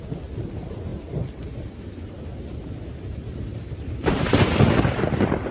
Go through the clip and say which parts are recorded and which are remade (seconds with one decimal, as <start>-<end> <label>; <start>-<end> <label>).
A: 0.0-0.9 recorded; 0.9-1.7 remade; 1.7-2.3 recorded; 2.3-4.3 remade; 4.3-5.5 recorded